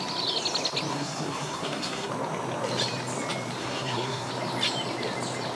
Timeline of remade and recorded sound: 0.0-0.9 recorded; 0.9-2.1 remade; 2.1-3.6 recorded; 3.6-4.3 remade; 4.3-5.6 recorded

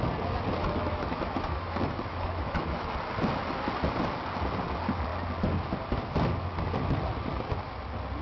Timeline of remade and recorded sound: 0.0-0.6 recorded; 0.6-2.9 remade; 2.9-8.2 recorded

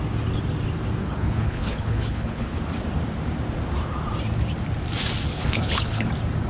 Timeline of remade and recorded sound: 0.0-1.0 recorded; 1.0-2.6 remade; 2.6-5.3 recorded; 5.3-6.1 remade; 6.1-6.5 recorded

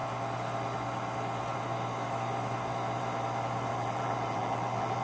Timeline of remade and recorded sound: 0.0-3.7 recorded; 3.7-5.0 remade

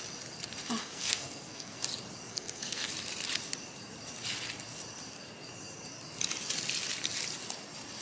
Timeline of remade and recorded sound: 0.0-0.8 recorded; 0.8-1.8 remade; 1.8-2.3 recorded; 2.3-2.9 remade; 2.9-8.0 recorded

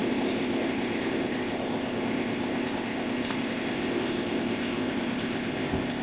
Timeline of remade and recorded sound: 0.0-6.0 remade

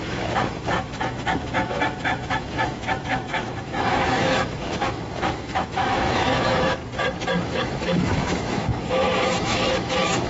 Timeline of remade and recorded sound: 0.0-6.8 remade; 6.8-7.4 recorded; 7.4-10.3 remade

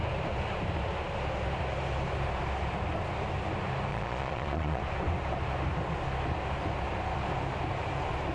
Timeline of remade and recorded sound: 0.0-3.9 recorded; 3.9-4.8 remade; 4.8-8.3 recorded